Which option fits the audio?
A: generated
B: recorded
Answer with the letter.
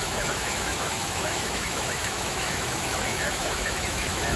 A